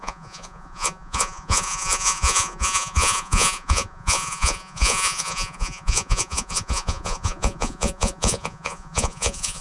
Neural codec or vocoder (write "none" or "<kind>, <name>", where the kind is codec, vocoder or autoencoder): vocoder, Vocos